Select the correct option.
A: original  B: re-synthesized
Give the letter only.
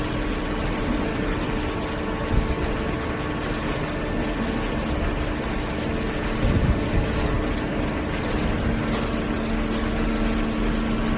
A